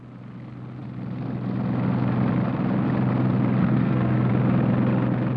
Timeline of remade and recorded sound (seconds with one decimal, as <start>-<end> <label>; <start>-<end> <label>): 0.0-3.6 recorded; 3.6-4.3 remade; 4.3-5.4 recorded